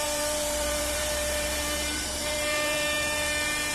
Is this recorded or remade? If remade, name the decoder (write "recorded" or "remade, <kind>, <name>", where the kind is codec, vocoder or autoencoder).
remade, vocoder, BigVGAN v2